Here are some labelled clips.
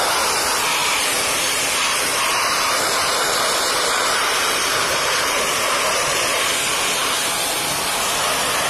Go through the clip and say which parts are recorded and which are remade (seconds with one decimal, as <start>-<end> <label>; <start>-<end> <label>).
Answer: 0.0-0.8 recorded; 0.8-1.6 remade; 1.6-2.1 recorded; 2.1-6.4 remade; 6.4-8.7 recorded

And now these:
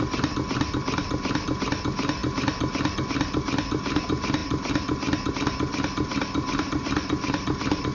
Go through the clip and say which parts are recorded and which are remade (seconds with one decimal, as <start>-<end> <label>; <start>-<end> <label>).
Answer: 0.0-7.9 recorded

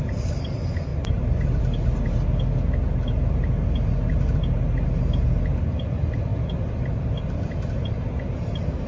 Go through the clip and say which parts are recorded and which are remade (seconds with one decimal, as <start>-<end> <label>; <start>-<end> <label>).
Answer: 0.0-0.9 recorded; 0.9-1.6 remade; 1.6-6.3 recorded; 6.3-8.9 remade

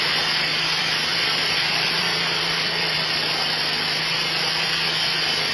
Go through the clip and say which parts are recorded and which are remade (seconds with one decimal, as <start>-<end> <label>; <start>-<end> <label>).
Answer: 0.0-1.1 recorded; 1.1-3.2 remade; 3.2-5.5 recorded

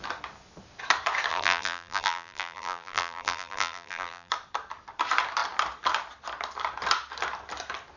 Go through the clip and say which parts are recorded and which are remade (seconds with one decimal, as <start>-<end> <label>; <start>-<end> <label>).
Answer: 0.0-1.3 recorded; 1.3-4.3 remade; 4.3-8.0 recorded

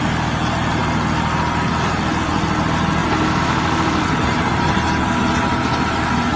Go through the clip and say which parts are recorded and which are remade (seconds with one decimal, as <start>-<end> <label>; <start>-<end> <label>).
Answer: 0.0-3.0 recorded; 3.0-5.6 remade; 5.6-6.4 recorded

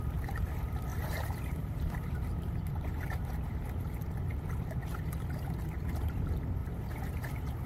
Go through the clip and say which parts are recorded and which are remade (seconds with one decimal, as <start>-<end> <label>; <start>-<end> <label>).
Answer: 0.0-0.9 recorded; 0.9-3.1 remade; 3.1-6.6 recorded; 6.6-7.2 remade; 7.2-7.7 recorded

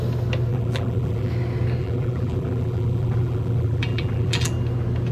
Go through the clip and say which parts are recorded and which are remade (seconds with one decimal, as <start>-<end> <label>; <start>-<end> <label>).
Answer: 0.0-0.5 recorded; 0.5-1.3 remade; 1.3-1.8 recorded; 1.8-4.5 remade; 4.5-5.1 recorded